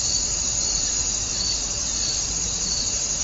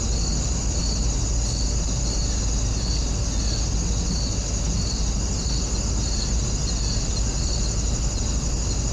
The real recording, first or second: second